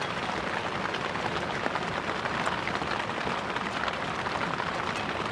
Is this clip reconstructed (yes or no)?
no